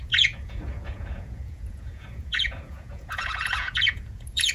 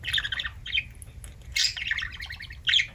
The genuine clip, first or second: second